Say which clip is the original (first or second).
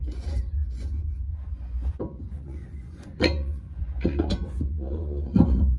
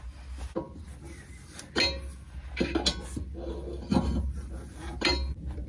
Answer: second